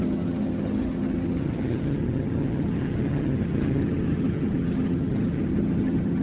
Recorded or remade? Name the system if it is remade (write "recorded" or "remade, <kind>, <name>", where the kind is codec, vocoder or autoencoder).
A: remade, vocoder, HiFi-GAN